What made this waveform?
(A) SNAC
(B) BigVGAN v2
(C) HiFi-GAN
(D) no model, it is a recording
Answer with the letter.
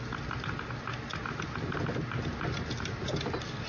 D